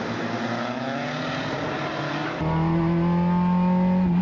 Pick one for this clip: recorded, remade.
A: recorded